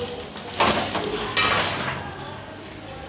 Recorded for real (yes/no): yes